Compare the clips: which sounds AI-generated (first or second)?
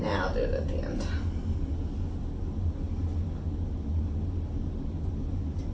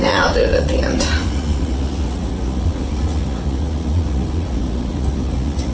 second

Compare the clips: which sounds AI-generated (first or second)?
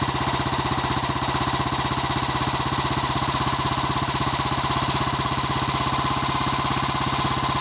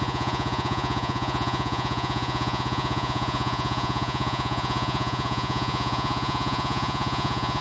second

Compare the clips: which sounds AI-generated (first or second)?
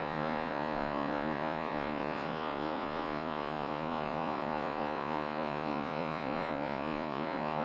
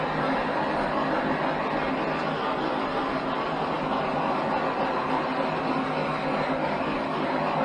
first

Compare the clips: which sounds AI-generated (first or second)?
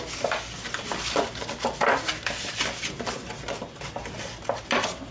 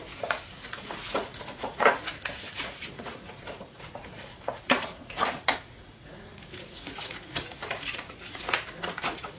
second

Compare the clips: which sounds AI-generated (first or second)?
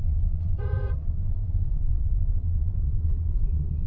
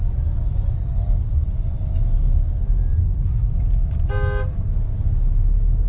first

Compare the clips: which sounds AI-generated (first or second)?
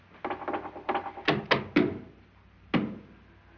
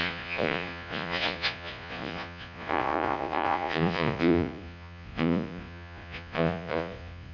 second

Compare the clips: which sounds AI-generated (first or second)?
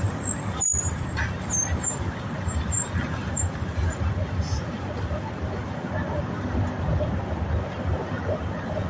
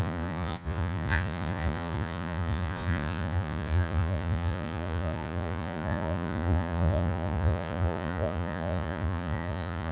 second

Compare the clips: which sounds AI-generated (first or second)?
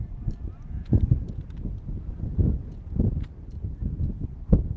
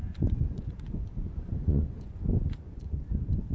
second